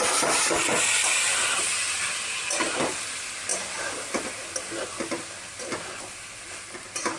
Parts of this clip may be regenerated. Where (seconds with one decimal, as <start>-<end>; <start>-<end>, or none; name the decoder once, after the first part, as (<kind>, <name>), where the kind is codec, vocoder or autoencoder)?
none